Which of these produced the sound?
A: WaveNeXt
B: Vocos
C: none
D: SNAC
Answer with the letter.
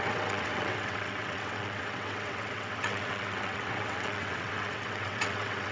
A